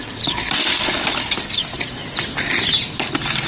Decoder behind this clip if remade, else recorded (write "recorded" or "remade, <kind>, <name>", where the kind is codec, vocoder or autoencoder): recorded